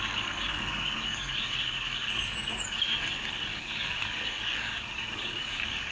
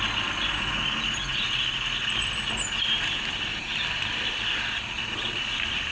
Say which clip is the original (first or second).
second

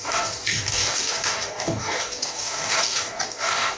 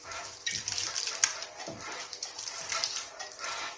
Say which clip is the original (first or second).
second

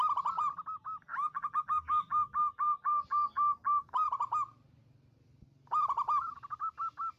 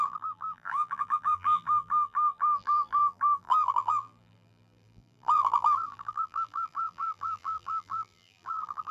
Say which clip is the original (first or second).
first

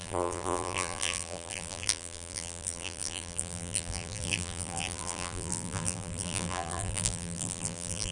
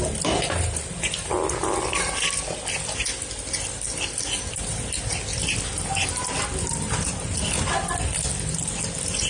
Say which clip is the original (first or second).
second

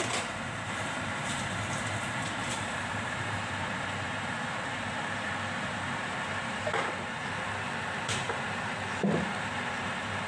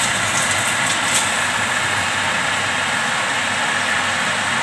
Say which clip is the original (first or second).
second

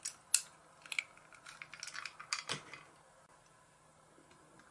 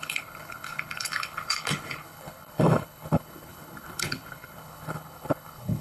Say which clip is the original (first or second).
first